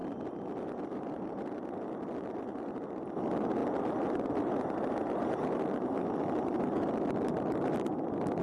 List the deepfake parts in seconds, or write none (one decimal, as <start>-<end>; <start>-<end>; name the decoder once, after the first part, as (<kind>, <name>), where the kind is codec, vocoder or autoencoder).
2.7-3.6 (vocoder, BigVGAN v2); 7.3-8.4